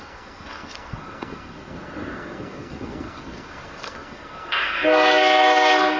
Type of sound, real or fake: fake